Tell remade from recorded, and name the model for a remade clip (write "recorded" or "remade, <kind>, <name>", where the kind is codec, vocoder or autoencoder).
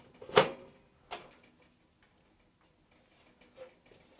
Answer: recorded